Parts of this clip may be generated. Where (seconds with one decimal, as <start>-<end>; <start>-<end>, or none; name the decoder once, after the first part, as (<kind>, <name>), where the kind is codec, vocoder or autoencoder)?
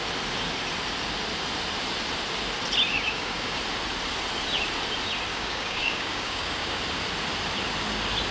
2.9-3.6 (codec, DAC); 5.3-6.8